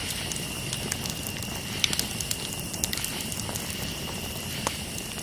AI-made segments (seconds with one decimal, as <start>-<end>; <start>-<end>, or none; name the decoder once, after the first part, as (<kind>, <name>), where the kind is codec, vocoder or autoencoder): none